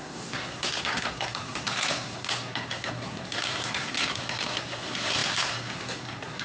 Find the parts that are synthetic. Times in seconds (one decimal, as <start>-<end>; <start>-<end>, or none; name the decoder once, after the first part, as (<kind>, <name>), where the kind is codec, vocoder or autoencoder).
0.0-6.4 (codec, SNAC)